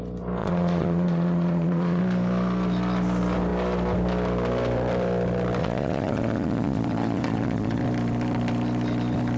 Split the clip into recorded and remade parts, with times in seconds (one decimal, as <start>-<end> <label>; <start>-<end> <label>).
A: 0.0-0.4 recorded; 0.4-2.0 remade; 2.0-5.6 recorded; 5.6-7.8 remade; 7.8-9.4 recorded